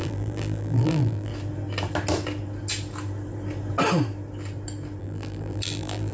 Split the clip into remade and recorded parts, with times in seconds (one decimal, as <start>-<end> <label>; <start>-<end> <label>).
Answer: 0.0-1.3 remade; 1.3-5.0 recorded; 5.0-6.1 remade